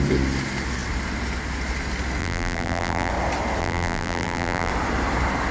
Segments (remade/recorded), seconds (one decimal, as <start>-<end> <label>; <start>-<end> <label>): 0.0-2.2 recorded; 2.2-3.1 remade; 3.1-3.6 recorded; 3.6-4.7 remade; 4.7-5.5 recorded